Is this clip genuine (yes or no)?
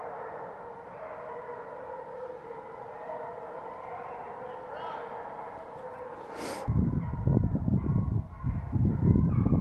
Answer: yes